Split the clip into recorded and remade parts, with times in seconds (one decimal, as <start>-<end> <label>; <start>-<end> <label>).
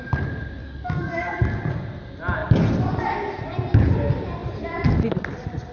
0.0-0.6 recorded; 0.6-1.4 remade; 1.4-5.7 recorded